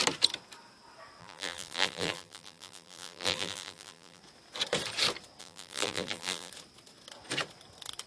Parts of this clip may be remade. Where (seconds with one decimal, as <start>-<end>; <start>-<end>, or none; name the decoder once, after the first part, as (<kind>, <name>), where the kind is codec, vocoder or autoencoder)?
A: 1.2-4.2 (vocoder, BigVGAN v2); 5.4-6.5